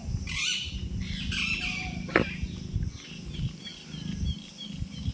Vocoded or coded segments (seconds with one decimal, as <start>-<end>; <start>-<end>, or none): none